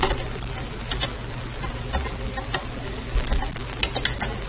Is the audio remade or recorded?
recorded